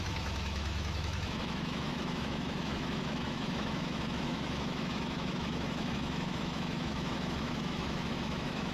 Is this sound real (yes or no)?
no